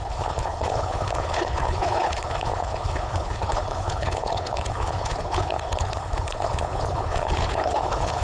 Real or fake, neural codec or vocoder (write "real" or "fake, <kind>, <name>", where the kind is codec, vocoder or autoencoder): fake, codec, HILCodec